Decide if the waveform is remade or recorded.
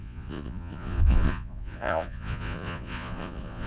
remade